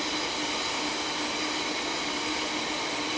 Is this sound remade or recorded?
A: recorded